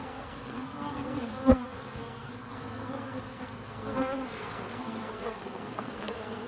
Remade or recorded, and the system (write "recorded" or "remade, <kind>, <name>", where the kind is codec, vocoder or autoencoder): remade, codec, SNAC